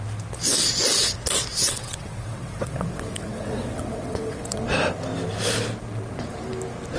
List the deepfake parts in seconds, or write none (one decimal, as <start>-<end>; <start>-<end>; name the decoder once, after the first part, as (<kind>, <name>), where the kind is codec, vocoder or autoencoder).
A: 1.5-4.6 (vocoder, WaveNeXt)